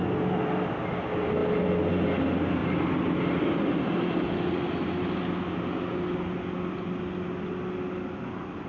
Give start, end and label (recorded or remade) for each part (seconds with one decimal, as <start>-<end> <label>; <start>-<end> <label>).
0.0-2.6 recorded; 2.6-5.1 remade; 5.1-8.7 recorded